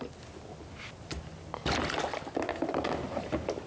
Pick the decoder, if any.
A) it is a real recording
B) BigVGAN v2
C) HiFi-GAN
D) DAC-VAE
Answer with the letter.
A